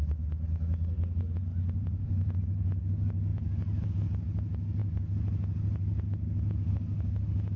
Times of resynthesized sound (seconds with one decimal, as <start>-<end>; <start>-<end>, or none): 1.5-2.4; 3.3-3.9

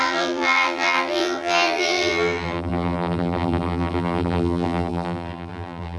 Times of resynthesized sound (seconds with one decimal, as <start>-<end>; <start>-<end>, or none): 0.0-6.0